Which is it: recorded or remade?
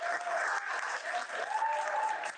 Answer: recorded